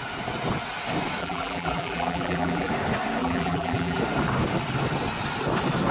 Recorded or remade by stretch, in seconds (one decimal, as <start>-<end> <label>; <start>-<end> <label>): 0.0-1.2 recorded; 1.2-2.7 remade; 2.7-3.2 recorded; 3.2-4.0 remade; 4.0-5.9 recorded